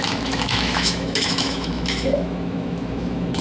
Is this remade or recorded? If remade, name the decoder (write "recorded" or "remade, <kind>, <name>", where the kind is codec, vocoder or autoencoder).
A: remade, autoencoder, DAC-VAE